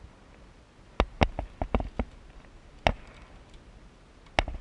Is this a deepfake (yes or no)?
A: no